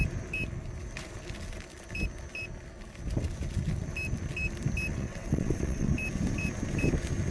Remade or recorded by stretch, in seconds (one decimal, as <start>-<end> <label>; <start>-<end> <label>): 0.0-4.9 recorded; 4.9-5.9 remade; 5.9-7.3 recorded